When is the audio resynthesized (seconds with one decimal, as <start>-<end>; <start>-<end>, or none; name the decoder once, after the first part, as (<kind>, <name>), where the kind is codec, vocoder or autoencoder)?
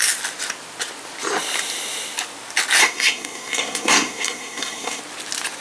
2.8-5.0 (codec, SNAC)